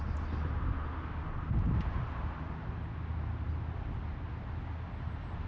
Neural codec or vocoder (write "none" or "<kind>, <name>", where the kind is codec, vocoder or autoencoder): none